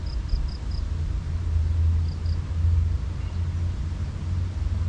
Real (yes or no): yes